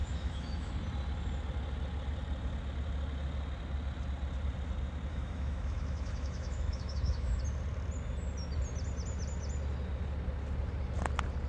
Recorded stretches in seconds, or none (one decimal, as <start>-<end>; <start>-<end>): 0.7-5.1; 7.4-11.5